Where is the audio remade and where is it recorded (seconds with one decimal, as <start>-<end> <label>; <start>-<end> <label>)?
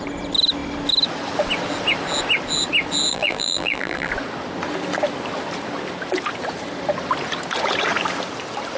0.0-3.1 recorded; 3.1-4.1 remade; 4.1-8.8 recorded